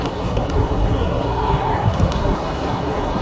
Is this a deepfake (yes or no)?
yes